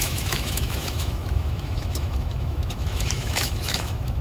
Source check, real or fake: fake